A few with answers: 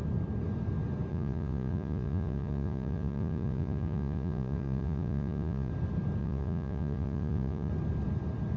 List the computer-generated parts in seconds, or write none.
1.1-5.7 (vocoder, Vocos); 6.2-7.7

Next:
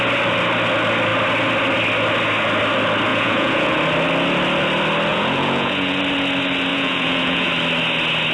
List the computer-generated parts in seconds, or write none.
3.1-3.8 (vocoder, Vocos); 5.1-6.0; 6.7-7.5

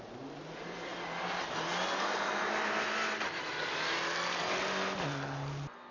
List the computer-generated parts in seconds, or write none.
none

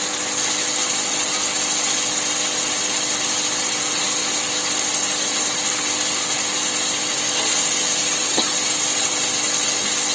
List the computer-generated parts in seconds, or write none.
none

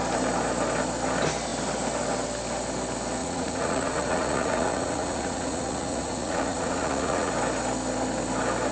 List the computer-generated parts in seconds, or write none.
3.2-7.3 (vocoder, Vocos)

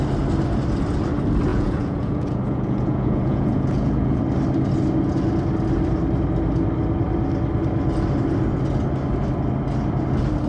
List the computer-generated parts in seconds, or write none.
1.5-4.2 (vocoder, Vocos)